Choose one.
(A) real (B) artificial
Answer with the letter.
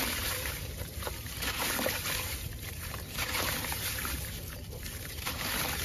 B